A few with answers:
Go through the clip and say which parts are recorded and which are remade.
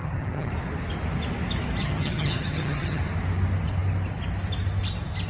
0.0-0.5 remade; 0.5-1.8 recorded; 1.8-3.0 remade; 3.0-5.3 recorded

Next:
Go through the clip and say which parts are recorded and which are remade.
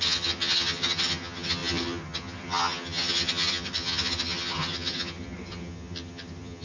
0.0-6.6 remade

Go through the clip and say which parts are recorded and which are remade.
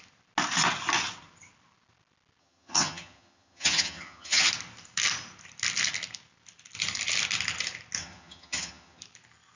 0.0-2.4 recorded; 2.4-4.5 remade; 4.5-8.0 recorded; 8.0-9.0 remade; 9.0-9.6 recorded